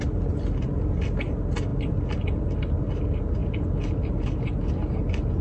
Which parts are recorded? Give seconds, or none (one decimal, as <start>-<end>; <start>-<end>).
0.0-5.4